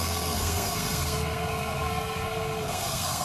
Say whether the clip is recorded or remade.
remade